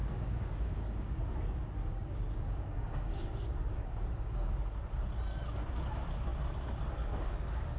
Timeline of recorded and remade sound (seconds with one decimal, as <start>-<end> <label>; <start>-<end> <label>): 0.0-1.2 remade; 1.2-1.8 recorded; 1.8-4.5 remade; 4.5-7.8 recorded